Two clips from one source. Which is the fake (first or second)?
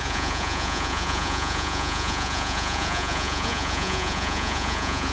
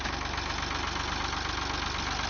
first